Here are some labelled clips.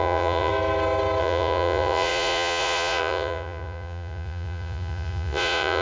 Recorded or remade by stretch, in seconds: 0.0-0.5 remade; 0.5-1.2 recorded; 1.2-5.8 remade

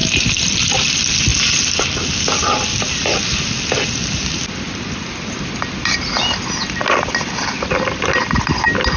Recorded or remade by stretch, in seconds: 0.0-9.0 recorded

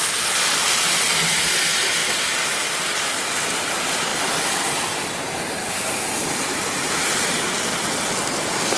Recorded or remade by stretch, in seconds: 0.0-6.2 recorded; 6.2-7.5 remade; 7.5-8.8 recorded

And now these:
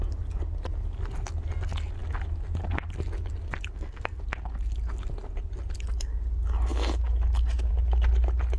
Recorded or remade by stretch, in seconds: 0.0-3.7 recorded; 3.7-4.2 remade; 4.2-8.6 recorded

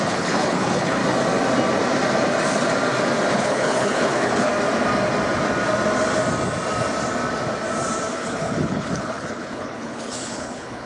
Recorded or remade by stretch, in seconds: 0.0-1.0 remade; 1.0-3.3 recorded; 3.3-4.5 remade; 4.5-8.1 recorded; 8.1-10.9 remade

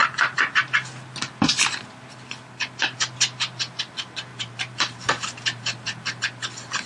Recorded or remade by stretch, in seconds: 0.0-4.3 recorded; 4.3-6.2 remade; 6.2-6.9 recorded

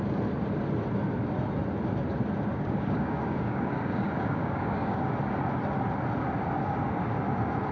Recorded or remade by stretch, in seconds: 0.0-2.5 recorded; 2.5-5.1 remade; 5.1-7.7 recorded